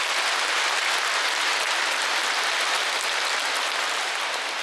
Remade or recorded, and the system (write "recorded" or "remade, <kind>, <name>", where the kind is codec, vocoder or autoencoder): recorded